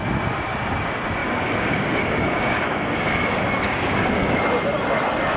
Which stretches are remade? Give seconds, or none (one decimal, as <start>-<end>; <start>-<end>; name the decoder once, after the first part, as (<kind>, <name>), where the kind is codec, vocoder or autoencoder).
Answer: 1.2-4.4 (codec, DAC)